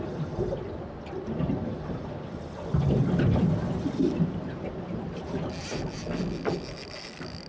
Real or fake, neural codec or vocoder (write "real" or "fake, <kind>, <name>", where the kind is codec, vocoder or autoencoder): real